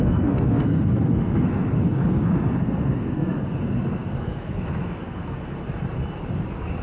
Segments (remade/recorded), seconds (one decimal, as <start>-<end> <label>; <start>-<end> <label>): 0.0-5.6 remade; 5.6-6.8 recorded